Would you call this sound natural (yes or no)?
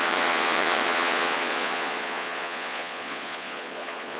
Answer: no